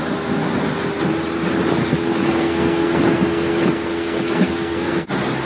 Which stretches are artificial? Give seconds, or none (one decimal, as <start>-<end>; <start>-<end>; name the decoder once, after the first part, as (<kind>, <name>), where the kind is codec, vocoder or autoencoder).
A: 1.8-5.1 (codec, SNAC)